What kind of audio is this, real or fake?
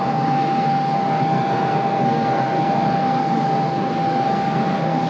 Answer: fake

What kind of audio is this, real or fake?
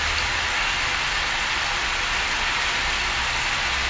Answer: real